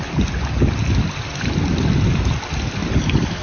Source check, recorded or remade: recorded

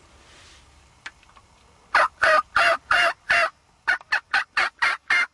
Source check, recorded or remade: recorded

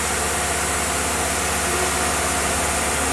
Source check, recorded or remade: recorded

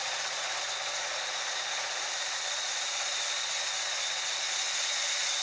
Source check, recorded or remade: recorded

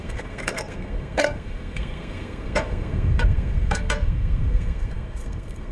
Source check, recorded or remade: remade